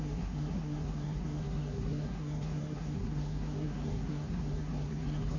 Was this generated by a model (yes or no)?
yes